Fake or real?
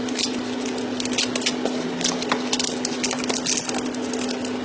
real